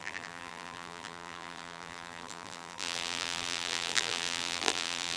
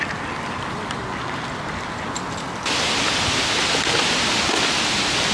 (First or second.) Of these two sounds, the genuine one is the second